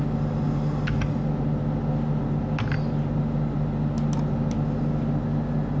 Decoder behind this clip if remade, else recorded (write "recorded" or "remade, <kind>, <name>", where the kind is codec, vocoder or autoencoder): recorded